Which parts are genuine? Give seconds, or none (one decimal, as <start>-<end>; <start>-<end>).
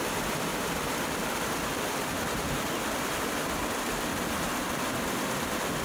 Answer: 0.0-5.8